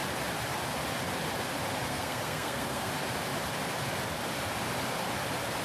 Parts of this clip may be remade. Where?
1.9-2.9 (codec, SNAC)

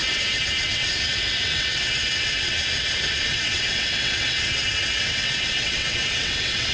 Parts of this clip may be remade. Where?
0.0-2.6 (vocoder, WaveNeXt); 3.3-6.7

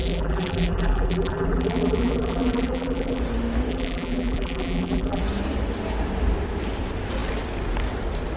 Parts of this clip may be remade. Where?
0.0-3.2 (vocoder, BigVGAN v2); 3.7-5.2